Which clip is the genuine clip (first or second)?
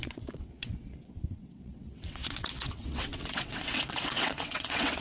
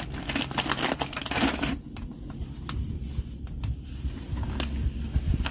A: second